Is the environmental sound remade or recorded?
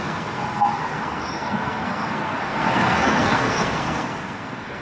remade